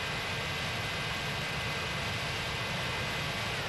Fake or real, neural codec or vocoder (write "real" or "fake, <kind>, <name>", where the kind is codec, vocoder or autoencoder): real